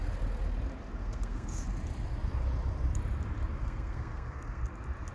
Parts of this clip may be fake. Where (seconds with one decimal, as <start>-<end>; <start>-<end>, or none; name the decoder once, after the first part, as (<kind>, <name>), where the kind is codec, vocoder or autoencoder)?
1.0-1.6 (codec, SNAC); 3.6-4.6